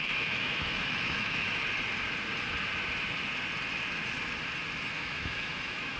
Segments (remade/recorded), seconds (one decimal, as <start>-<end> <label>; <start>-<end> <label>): 0.0-1.6 remade; 1.6-4.9 recorded; 4.9-6.0 remade